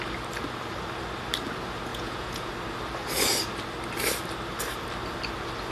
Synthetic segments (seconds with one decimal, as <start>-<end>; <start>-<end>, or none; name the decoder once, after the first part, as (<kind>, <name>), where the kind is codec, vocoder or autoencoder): 1.9-2.5 (vocoder, Vocos)